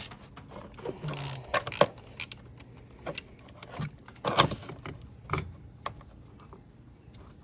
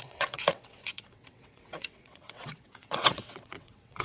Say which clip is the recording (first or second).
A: first